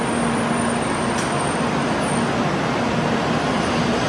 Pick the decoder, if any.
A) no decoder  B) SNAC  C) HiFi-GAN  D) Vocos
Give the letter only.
A